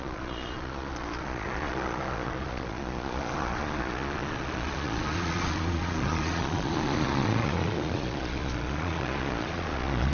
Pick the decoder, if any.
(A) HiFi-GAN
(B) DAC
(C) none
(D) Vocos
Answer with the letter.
D